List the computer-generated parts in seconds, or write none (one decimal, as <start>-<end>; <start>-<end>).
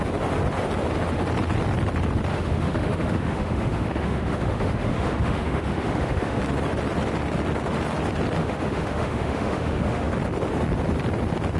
2.3-6.4; 8.4-10.1